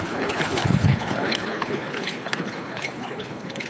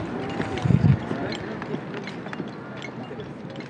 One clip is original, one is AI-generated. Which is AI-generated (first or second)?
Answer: first